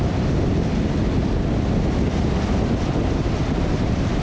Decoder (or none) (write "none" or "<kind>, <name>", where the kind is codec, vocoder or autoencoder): none